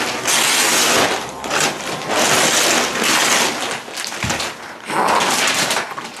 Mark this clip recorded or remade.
recorded